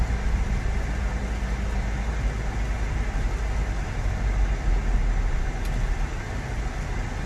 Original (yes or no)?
yes